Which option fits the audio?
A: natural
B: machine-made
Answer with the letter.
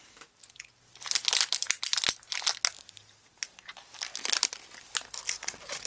A